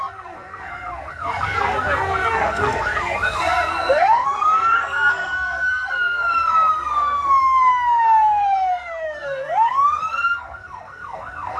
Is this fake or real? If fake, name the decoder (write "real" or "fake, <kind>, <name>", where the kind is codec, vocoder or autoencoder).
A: fake, codec, SNAC